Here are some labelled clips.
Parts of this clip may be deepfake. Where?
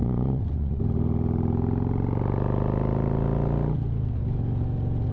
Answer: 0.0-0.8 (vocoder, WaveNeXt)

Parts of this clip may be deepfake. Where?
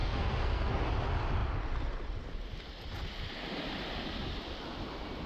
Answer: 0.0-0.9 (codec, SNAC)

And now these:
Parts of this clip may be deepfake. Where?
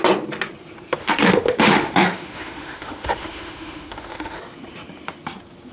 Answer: 1.0-4.4 (autoencoder, DAC-VAE)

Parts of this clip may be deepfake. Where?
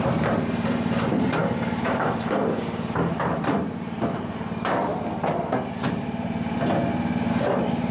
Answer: 0.0-4.9 (vocoder, BigVGAN v2); 7.3-7.9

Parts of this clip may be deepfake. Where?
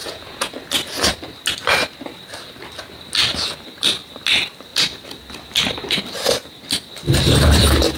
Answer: 0.0-0.5 (vocoder, Vocos)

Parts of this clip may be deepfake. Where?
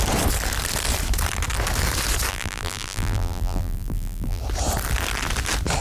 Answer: 2.3-4.4 (vocoder, BigVGAN v2)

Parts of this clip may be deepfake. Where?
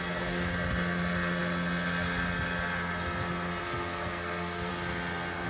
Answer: 3.6-4.7 (codec, SNAC)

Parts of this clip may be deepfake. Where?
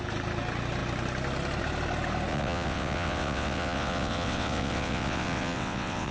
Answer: 2.3-6.1 (vocoder, WaveNeXt)